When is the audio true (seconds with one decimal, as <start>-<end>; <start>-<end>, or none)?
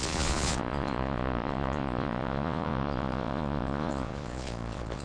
none